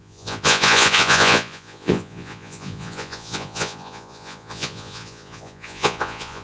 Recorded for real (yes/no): no